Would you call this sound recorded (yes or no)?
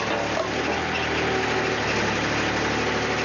yes